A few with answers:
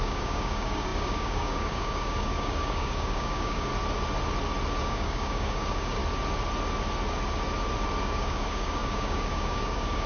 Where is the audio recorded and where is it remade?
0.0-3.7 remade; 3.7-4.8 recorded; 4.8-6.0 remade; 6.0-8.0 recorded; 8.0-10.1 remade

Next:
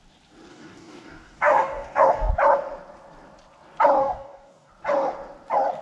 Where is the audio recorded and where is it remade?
0.0-0.5 recorded; 0.5-2.3 remade; 2.3-4.0 recorded; 4.0-4.7 remade; 4.7-5.8 recorded

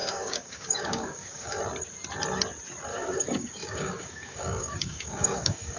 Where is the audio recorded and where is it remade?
0.0-1.6 remade; 1.6-2.9 recorded; 2.9-5.8 remade